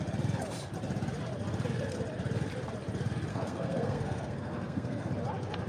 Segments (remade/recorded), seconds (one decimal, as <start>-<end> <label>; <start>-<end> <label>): 0.0-3.3 recorded; 3.3-5.1 remade; 5.1-5.7 recorded

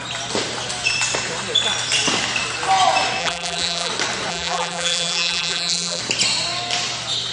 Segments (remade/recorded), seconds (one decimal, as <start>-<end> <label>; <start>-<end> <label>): 0.0-3.2 recorded; 3.2-3.9 remade; 3.9-4.3 recorded; 4.3-6.0 remade; 6.0-7.3 recorded

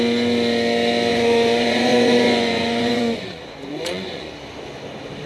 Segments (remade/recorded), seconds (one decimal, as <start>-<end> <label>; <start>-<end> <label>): 0.0-1.1 recorded; 1.1-4.3 remade; 4.3-5.3 recorded